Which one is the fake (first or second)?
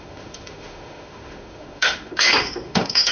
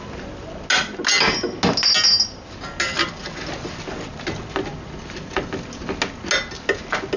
first